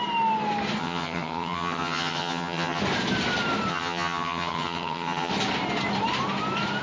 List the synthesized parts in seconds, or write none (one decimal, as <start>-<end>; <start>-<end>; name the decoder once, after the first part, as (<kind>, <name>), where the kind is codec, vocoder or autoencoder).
0.8-2.8 (vocoder, HiFi-GAN); 3.7-5.3